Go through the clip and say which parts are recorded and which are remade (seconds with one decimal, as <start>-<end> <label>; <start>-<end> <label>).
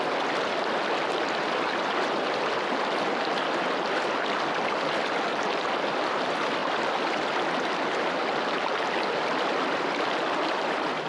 0.0-11.1 recorded